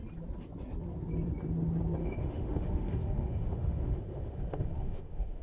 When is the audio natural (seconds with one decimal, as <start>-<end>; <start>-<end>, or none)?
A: 0.0-2.0